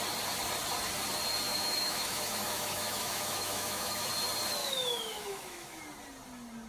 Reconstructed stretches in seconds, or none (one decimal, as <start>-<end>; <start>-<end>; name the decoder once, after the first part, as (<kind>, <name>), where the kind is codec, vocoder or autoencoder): 1.5-4.1 (autoencoder, DAC-VAE); 4.6-5.8